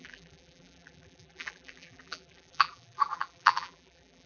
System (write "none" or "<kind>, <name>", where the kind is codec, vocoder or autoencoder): vocoder, BigVGAN v2